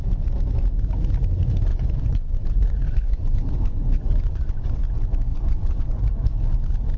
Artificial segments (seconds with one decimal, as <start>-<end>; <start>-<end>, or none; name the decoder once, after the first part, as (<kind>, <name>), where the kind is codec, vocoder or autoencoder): 1.7-4.8 (vocoder, Vocos); 5.3-6.0